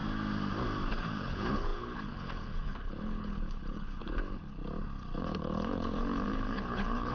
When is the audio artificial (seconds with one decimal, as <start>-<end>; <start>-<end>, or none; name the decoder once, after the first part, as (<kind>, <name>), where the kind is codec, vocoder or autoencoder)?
0.9-4.6 (codec, HILCodec); 5.2-7.1